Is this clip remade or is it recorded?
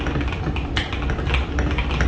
recorded